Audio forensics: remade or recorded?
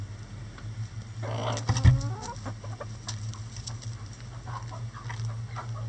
recorded